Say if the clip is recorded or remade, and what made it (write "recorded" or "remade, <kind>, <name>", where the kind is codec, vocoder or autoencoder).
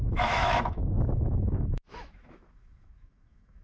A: remade, autoencoder, DAC-VAE